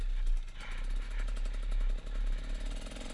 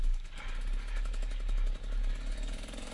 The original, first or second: first